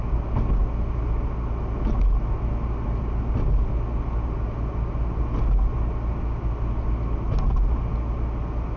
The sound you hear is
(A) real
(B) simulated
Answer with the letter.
A